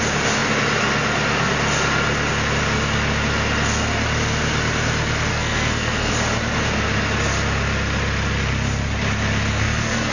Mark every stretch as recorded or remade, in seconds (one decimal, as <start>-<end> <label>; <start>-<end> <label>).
0.0-5.3 recorded; 5.3-6.1 remade; 6.1-9.5 recorded; 9.5-10.1 remade